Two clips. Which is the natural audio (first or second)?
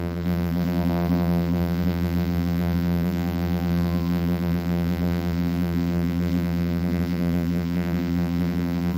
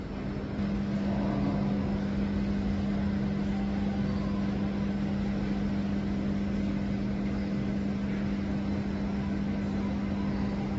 second